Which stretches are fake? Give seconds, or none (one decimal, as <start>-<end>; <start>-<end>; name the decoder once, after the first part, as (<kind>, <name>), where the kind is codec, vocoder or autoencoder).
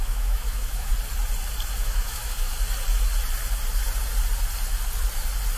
0.0-0.9 (autoencoder, DAC-VAE); 1.8-2.5